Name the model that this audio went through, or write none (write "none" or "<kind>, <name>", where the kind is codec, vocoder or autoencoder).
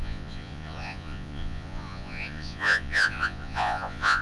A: vocoder, Vocos